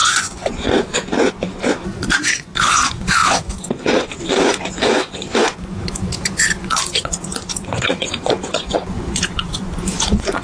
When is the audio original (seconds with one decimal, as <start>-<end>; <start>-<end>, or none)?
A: none